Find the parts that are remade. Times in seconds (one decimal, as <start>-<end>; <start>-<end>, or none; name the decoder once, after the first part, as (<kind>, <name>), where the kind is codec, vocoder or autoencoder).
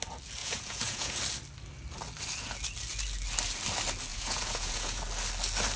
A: 0.4-1.2 (vocoder, Vocos); 4.1-5.0